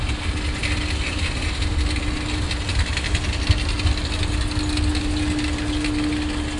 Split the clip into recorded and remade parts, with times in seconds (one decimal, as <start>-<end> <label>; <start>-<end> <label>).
0.0-6.6 recorded